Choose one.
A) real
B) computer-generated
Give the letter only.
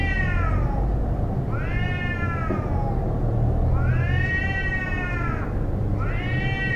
A